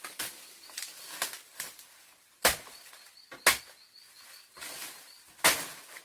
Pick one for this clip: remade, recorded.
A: recorded